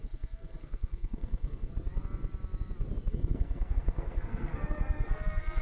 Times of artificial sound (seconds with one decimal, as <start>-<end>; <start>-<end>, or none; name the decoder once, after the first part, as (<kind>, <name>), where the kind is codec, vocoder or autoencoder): 0.0-1.7 (codec, SNAC); 3.1-5.6